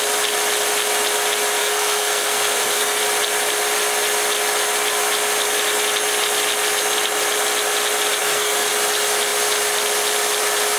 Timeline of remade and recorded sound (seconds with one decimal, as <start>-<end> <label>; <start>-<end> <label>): 0.0-1.6 recorded; 1.6-3.0 remade; 3.0-8.2 recorded; 8.2-8.7 remade; 8.7-10.8 recorded

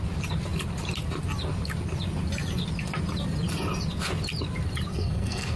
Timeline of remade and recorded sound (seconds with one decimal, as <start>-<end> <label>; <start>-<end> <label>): 0.0-4.9 recorded; 4.9-5.6 remade